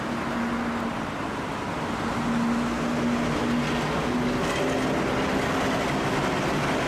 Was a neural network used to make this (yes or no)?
no